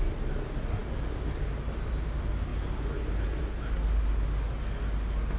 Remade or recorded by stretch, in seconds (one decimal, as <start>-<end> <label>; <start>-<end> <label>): 0.0-5.4 recorded

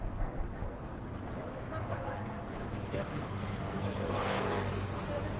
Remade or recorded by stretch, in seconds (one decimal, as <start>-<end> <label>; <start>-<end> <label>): 0.0-1.1 remade; 1.1-1.8 recorded; 1.8-5.0 remade; 5.0-5.4 recorded